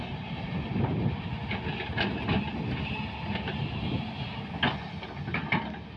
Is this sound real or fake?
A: real